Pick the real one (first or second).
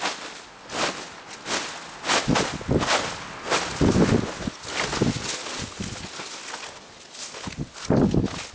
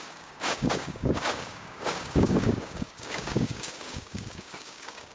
first